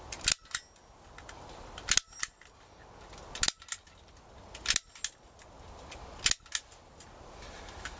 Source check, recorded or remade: recorded